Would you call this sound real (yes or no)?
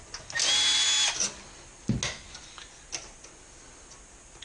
yes